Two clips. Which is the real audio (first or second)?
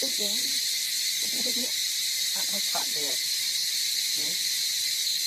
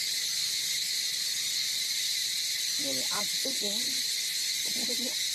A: second